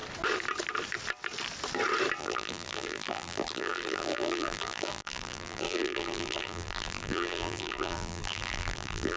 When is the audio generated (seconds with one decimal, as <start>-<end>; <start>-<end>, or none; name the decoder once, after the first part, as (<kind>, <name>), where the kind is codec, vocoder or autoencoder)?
2.2-9.2 (vocoder, BigVGAN v2)